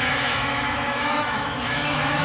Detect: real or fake fake